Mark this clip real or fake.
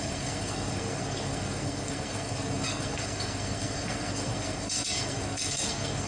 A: fake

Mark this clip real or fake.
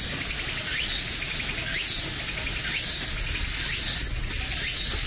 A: real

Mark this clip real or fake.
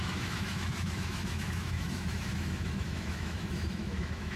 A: fake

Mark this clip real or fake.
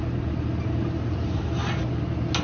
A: real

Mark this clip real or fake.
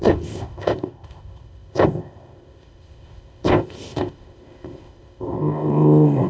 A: fake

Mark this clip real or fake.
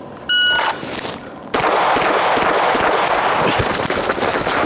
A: real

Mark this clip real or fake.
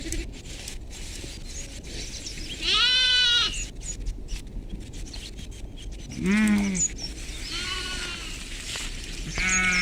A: real